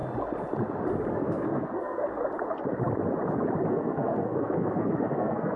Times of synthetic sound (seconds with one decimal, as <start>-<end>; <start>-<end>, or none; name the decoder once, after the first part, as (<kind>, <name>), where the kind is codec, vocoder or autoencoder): 1.1-2.0 (codec, SNAC); 3.7-5.6